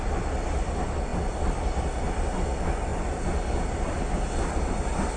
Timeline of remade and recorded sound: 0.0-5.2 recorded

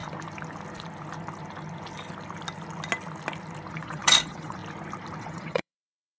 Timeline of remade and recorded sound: 0.0-3.7 recorded; 3.7-4.6 remade; 4.6-5.2 recorded; 5.2-6.2 remade

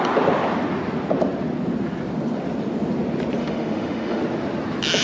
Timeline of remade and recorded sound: 0.0-3.4 recorded; 3.4-4.2 remade; 4.2-5.0 recorded